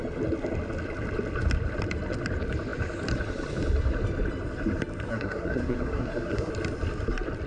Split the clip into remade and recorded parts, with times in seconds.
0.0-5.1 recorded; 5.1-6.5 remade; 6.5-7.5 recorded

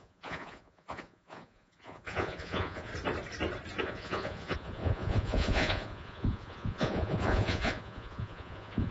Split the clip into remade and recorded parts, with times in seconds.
0.0-2.9 remade; 2.9-3.8 recorded; 3.8-8.9 remade

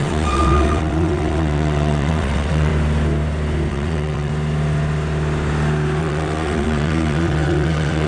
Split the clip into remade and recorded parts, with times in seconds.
0.0-2.7 remade; 2.7-3.7 recorded; 3.7-4.3 remade; 4.3-6.0 recorded; 6.0-8.1 remade